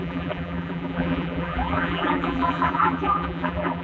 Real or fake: fake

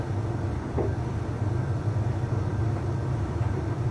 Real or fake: fake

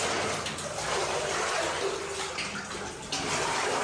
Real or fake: real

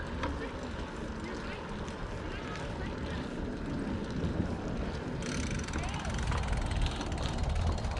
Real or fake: real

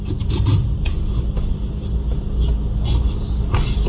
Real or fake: real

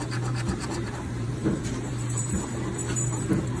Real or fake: fake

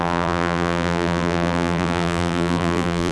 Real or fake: fake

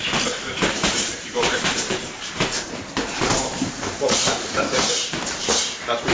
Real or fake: fake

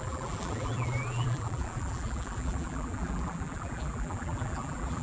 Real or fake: fake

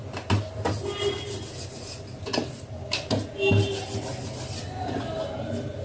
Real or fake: real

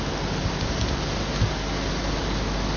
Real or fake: real